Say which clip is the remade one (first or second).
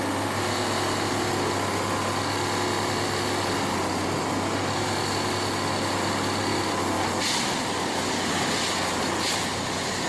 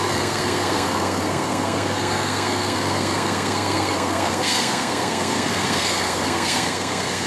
second